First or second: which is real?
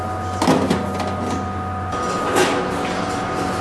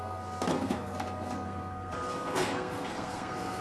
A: first